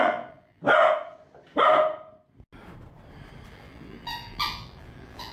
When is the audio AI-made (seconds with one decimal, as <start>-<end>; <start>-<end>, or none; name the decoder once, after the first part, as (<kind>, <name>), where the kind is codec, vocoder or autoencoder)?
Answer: 0.0-0.6 (vocoder, BigVGAN v2); 3.5-5.3

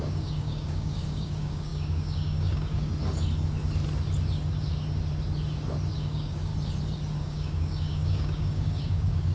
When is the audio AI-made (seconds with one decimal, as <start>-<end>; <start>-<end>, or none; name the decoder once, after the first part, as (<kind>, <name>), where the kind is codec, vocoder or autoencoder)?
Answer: 0.0-2.9 (codec, DAC); 5.9-6.5; 7.2-9.3

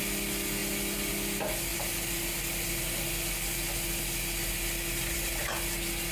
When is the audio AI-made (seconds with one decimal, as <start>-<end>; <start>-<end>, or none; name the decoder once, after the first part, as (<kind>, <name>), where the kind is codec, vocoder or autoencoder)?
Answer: none

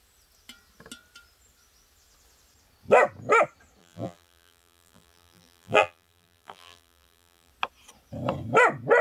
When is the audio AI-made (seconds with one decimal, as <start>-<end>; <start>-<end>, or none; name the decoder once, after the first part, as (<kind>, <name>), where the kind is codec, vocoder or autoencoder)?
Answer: 3.8-7.5 (vocoder, BigVGAN v2)

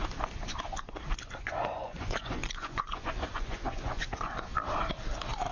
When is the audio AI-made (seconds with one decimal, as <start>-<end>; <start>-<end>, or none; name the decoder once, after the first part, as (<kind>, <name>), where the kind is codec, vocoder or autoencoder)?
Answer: 1.4-4.5 (vocoder, Vocos)